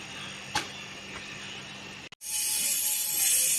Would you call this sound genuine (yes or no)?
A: yes